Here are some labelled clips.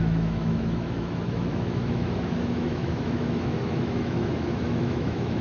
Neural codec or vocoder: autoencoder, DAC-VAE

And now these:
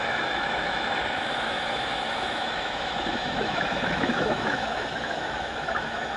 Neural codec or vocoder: autoencoder, DAC-VAE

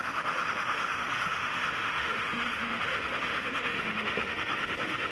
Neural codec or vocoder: autoencoder, DAC-VAE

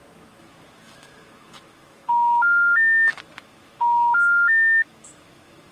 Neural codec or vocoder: autoencoder, DAC-VAE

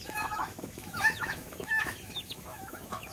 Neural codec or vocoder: autoencoder, DAC-VAE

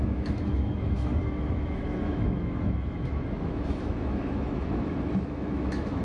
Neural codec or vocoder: autoencoder, DAC-VAE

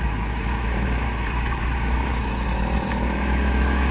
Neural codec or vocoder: autoencoder, DAC-VAE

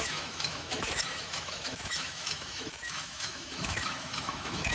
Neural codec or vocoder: autoencoder, DAC-VAE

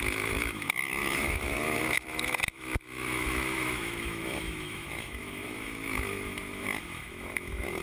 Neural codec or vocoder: autoencoder, DAC-VAE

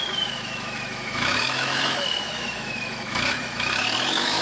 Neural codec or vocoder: autoencoder, DAC-VAE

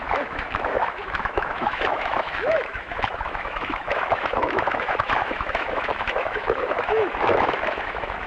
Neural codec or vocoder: autoencoder, DAC-VAE